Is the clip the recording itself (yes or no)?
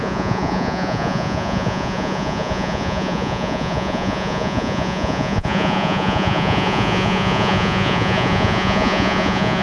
no